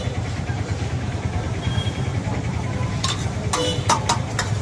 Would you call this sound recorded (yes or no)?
no